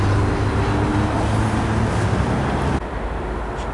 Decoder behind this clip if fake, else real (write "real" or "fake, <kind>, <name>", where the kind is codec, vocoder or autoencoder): real